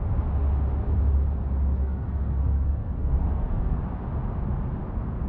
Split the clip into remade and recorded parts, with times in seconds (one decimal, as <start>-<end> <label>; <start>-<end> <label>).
0.0-1.8 recorded; 1.8-3.8 remade; 3.8-5.3 recorded